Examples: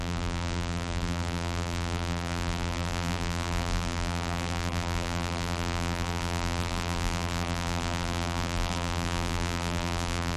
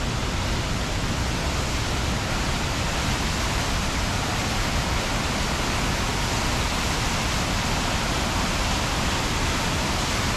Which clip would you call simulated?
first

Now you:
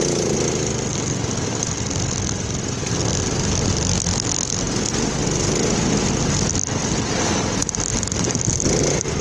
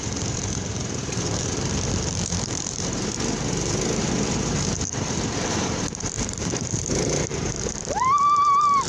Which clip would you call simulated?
second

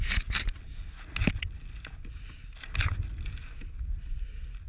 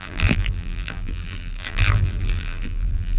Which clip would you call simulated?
second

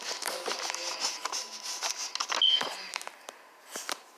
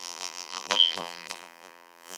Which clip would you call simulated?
second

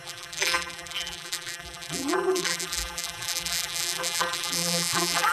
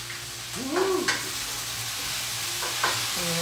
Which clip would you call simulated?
first